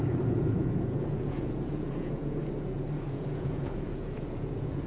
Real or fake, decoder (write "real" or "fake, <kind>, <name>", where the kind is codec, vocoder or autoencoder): fake, vocoder, Vocos